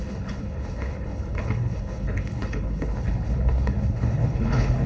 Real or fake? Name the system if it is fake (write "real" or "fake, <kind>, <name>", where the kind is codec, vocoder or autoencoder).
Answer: fake, codec, HILCodec